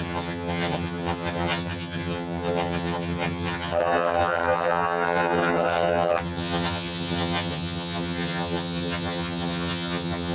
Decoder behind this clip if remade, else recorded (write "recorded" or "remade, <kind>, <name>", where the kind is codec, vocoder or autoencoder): remade, vocoder, HiFi-GAN